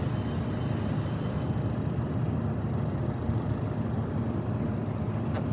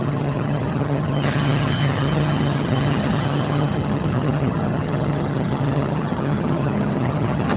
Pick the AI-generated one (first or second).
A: second